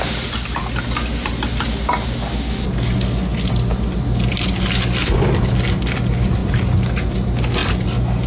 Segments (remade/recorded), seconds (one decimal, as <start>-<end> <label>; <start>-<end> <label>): 0.0-8.3 recorded